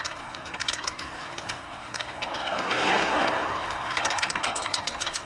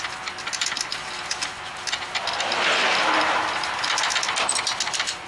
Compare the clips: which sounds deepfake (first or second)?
first